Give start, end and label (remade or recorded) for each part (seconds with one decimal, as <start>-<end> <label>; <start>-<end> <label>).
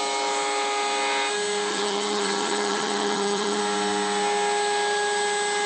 0.0-1.7 recorded; 1.7-3.6 remade; 3.6-5.7 recorded